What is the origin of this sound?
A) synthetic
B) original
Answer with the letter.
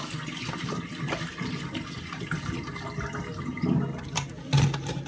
B